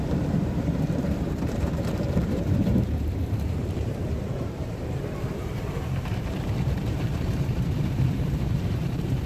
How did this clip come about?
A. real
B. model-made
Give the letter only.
B